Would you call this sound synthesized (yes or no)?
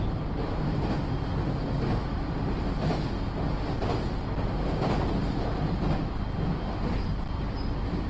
no